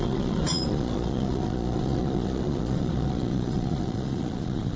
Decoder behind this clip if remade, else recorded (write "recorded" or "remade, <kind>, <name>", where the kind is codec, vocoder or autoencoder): remade, vocoder, Vocos